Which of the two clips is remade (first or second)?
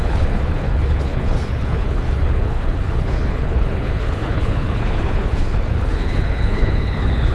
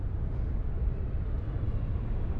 first